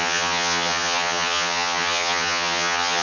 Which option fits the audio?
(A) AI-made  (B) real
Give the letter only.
A